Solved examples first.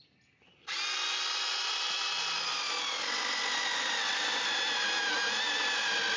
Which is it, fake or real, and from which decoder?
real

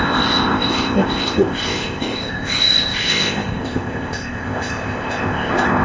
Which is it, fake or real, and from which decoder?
fake, codec, ZipCodec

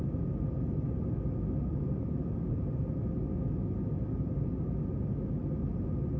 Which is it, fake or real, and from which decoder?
real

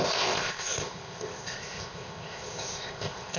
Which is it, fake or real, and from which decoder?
fake, codec, ZipCodec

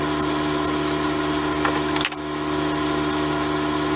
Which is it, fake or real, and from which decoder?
real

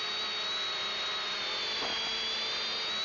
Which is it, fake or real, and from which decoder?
real